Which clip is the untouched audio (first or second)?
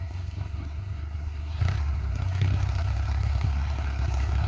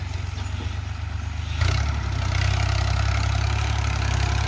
second